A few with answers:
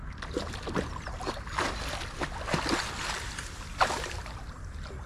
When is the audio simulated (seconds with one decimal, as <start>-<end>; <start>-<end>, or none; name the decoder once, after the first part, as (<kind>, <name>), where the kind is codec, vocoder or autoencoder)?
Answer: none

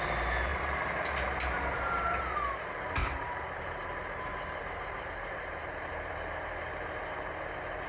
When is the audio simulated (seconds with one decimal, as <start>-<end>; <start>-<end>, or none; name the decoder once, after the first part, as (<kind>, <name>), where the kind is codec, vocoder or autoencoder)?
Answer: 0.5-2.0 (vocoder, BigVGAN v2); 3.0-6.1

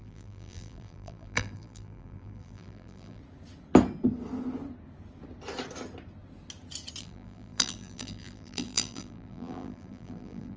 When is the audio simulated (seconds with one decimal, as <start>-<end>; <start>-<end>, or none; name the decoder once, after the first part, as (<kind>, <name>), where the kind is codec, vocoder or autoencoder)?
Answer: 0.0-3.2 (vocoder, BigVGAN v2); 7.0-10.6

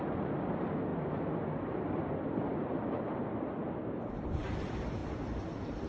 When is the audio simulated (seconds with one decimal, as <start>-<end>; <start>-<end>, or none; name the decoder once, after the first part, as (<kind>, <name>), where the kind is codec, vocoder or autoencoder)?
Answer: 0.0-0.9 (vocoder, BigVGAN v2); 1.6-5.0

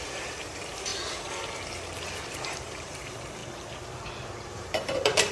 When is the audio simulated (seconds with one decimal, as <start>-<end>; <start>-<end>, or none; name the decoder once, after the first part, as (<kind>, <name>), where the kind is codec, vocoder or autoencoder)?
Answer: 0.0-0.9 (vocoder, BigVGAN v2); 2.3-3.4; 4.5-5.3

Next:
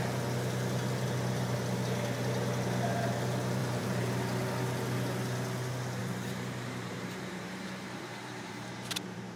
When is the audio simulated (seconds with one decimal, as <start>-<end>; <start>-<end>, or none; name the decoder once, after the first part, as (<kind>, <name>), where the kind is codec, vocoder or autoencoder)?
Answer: 3.6-4.1 (vocoder, BigVGAN v2); 6.0-9.4

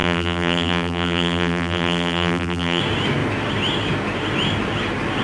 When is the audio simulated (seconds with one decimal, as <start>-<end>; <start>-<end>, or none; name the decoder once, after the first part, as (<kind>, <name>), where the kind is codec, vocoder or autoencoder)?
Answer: 0.0-2.8 (vocoder, BigVGAN v2)

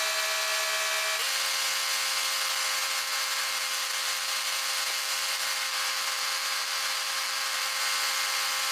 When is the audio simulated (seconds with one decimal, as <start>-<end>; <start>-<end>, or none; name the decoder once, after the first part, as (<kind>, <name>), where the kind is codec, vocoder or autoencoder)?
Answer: 2.8-7.8 (vocoder, BigVGAN v2)